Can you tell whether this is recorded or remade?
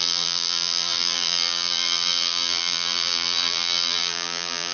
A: remade